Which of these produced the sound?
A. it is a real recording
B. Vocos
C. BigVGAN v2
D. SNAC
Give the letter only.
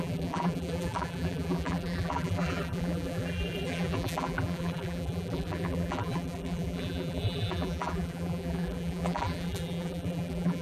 C